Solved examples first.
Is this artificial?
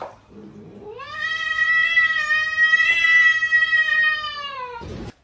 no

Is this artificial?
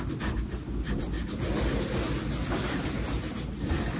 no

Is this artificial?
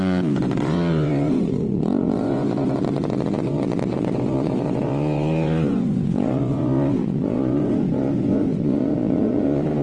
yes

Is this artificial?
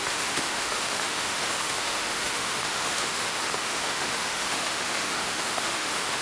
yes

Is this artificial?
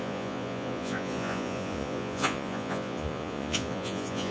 yes